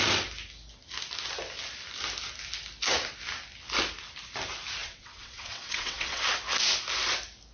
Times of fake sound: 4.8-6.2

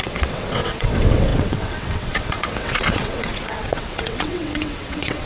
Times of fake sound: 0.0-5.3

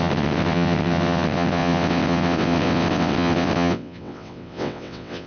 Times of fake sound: 0.0-5.3

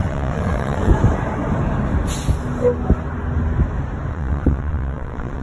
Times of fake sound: 0.0-0.9; 4.1-5.4